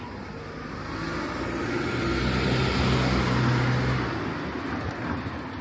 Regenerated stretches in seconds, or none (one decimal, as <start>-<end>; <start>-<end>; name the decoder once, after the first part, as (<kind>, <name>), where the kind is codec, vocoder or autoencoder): none